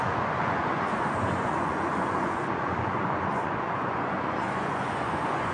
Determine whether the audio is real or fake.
fake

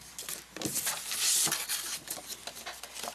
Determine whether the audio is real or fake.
real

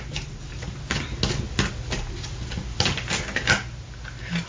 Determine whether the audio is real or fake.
real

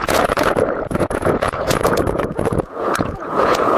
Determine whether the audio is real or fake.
fake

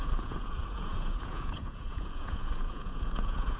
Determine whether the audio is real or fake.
fake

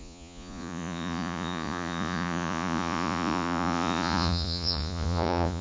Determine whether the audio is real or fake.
fake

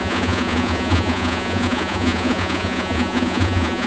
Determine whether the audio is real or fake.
fake